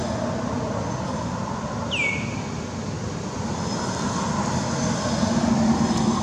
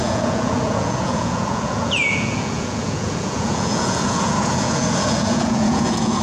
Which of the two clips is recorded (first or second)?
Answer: first